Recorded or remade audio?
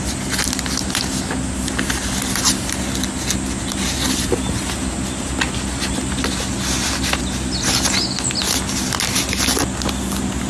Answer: recorded